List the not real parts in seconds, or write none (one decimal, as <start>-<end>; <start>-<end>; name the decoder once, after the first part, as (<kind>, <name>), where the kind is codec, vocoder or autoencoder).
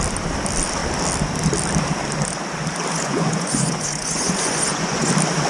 2.9-5.1 (vocoder, Vocos)